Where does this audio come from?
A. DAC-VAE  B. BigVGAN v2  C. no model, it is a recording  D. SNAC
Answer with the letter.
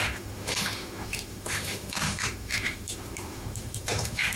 A